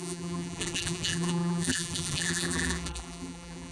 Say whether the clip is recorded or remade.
remade